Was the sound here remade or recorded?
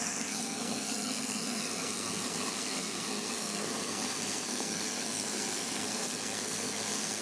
remade